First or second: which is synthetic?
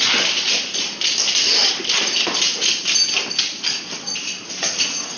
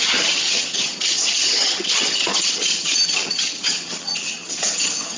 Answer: second